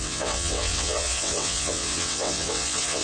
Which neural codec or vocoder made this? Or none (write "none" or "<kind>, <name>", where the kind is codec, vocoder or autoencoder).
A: vocoder, WaveNeXt